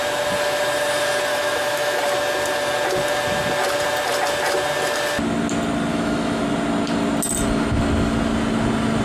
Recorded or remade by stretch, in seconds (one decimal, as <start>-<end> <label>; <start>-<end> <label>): 0.0-1.3 recorded; 1.3-2.0 remade; 2.0-5.9 recorded; 5.9-6.4 remade; 6.4-9.0 recorded